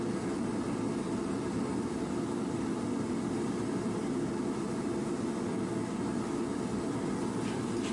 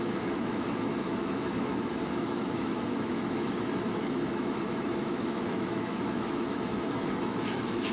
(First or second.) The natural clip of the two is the first